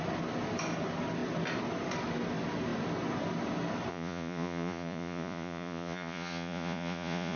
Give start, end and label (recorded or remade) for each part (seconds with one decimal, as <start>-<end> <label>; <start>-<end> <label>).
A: 0.0-3.9 recorded; 3.9-7.4 remade